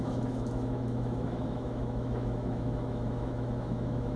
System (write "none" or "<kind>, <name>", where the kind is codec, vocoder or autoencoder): autoencoder, DAC-VAE